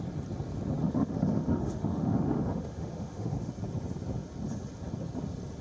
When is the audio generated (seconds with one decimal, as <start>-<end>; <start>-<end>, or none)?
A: 0.8-3.5